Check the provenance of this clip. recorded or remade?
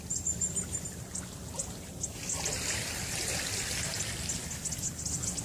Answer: recorded